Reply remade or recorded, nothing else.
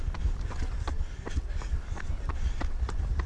recorded